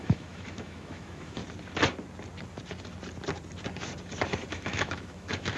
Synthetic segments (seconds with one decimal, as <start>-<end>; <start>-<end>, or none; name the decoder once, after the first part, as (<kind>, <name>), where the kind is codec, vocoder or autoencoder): 0.0-1.4 (autoencoder, DAC-VAE); 4.5-5.6